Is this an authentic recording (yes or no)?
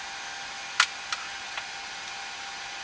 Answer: yes